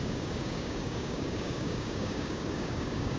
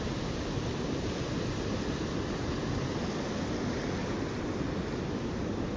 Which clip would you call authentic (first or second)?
second